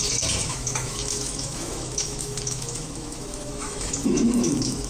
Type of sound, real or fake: fake